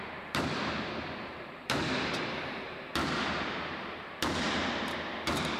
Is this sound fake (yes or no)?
yes